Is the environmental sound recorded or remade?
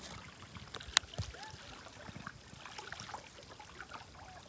recorded